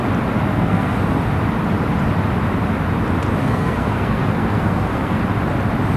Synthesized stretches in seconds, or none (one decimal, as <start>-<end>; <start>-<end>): 0.5-1.0; 3.4-5.2